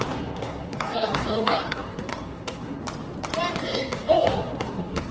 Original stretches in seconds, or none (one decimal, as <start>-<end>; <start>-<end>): 2.8-3.6